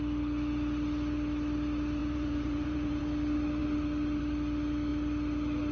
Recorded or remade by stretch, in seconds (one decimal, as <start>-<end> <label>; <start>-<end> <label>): 0.0-2.0 recorded; 2.0-3.0 remade; 3.0-5.7 recorded